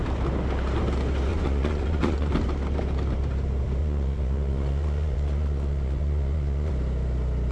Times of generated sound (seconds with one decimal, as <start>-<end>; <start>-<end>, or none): 1.3-2.3; 3.8-6.7